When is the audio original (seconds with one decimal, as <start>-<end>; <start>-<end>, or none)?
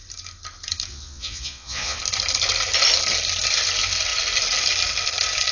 0.0-0.9; 2.0-5.5